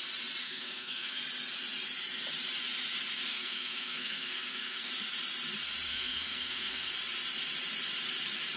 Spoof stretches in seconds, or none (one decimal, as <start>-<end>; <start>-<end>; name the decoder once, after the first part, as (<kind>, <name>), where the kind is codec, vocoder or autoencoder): 0.4-1.2 (codec, SNAC); 3.3-4.9; 5.9-6.9